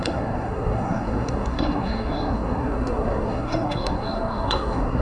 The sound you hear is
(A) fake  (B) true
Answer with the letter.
A